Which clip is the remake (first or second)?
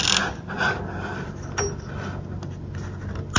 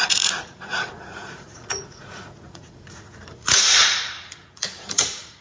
second